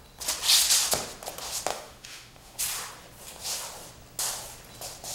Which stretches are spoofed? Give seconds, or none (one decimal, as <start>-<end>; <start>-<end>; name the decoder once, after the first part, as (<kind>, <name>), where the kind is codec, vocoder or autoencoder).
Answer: 1.7-2.6 (autoencoder, DAC-VAE)